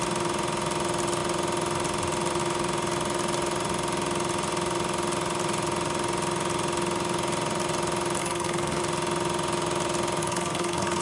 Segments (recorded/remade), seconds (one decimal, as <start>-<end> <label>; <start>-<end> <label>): 0.0-8.2 recorded; 8.2-8.8 remade; 8.8-10.2 recorded; 10.2-11.0 remade